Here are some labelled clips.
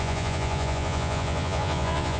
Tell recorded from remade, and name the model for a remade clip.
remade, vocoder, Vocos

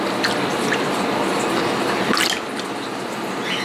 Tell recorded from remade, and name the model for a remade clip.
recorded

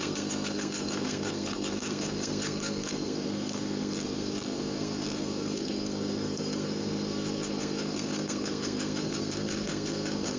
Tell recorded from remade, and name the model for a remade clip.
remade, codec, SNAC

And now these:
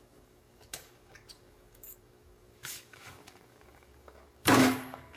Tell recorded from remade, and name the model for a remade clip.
remade, codec, DAC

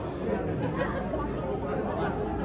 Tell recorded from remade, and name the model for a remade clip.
recorded